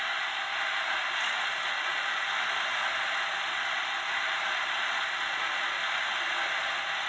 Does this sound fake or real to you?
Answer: real